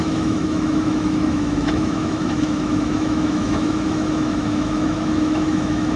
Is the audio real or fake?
fake